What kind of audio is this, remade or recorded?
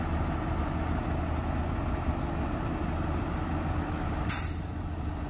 recorded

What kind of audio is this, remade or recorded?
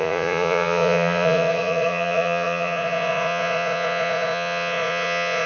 remade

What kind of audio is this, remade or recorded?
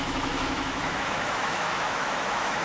remade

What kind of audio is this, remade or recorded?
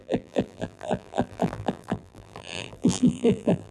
remade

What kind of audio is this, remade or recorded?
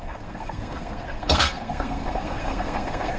remade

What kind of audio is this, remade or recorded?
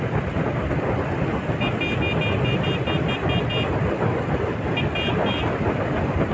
recorded